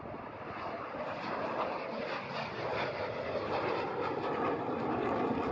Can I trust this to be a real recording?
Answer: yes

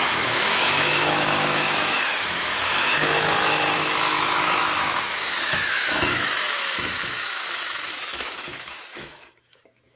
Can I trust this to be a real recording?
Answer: no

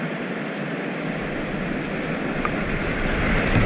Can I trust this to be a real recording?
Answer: yes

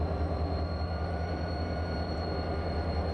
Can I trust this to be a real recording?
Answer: yes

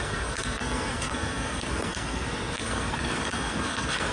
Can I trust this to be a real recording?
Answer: no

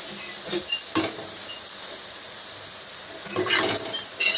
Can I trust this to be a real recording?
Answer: yes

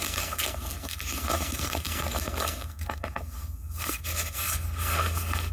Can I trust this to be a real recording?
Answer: no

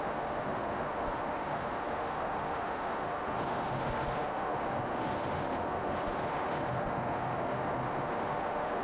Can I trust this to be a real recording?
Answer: no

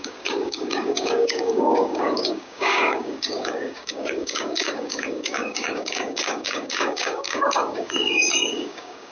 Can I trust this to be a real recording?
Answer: no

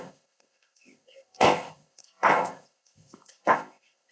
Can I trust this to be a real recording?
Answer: no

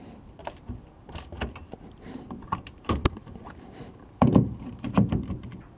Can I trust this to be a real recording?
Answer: no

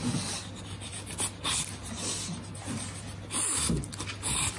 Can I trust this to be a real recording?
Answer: yes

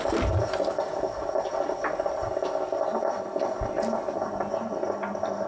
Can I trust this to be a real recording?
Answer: yes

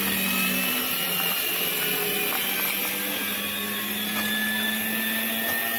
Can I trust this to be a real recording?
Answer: yes